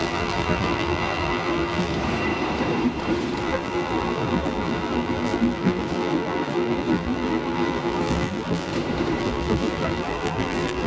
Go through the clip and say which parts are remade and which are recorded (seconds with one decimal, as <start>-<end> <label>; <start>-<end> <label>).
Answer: 0.0-1.9 remade; 1.9-3.4 recorded; 3.4-8.7 remade; 8.7-9.2 recorded; 9.2-10.9 remade